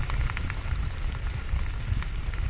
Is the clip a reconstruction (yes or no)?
yes